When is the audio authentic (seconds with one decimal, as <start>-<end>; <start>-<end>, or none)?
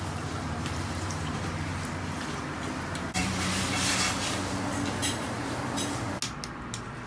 0.0-0.6; 1.3-3.2; 3.9-5.0; 5.6-7.1